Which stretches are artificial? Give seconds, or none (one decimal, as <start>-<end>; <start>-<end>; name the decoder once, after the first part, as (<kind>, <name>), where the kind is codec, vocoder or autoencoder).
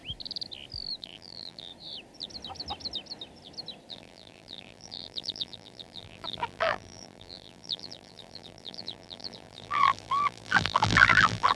1.0-1.7 (vocoder, BigVGAN v2); 3.9-11.5